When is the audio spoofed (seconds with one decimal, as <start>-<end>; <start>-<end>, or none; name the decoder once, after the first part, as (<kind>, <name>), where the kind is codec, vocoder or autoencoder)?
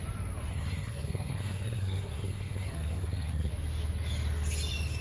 0.5-3.5 (codec, SNAC)